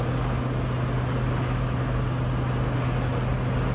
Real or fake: real